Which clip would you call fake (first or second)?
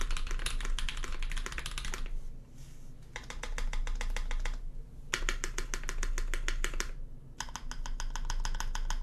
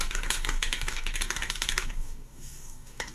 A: second